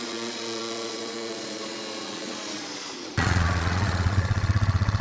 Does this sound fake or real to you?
fake